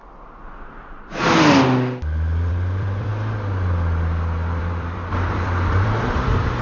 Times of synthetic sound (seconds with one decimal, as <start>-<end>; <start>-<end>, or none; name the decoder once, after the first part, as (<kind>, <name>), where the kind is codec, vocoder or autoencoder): 2.5-3.1 (vocoder, BigVGAN v2); 4.6-6.6